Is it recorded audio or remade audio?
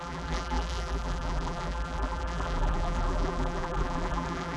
remade